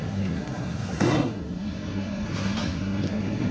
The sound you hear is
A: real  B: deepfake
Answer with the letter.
B